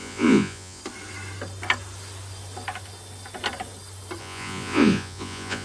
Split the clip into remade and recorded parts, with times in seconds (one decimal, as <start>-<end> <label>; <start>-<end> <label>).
0.0-0.8 remade; 0.8-4.2 recorded; 4.2-5.6 remade